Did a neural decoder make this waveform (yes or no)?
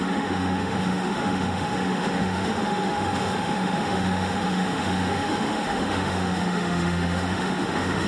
yes